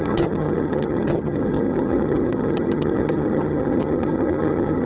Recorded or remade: remade